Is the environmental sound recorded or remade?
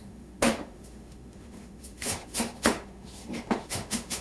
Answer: remade